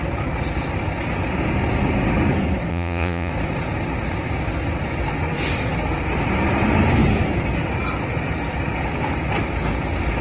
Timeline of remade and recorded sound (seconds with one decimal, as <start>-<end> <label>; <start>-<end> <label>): 0.0-2.7 recorded; 2.7-3.3 remade; 3.3-10.2 recorded